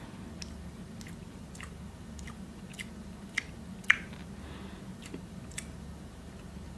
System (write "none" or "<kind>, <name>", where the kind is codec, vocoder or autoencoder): none